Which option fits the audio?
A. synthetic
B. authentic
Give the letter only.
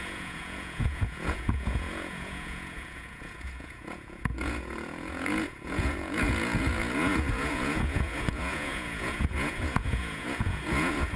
A